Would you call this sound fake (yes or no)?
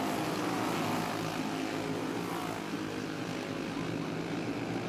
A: no